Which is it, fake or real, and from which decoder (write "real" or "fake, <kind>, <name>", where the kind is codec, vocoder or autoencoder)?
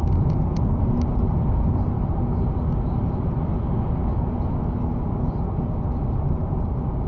real